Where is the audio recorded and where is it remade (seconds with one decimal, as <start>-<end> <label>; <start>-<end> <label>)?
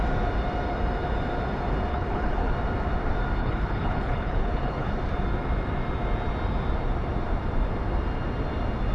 0.0-1.9 recorded; 1.9-2.5 remade; 2.5-3.4 recorded; 3.4-4.9 remade; 4.9-8.9 recorded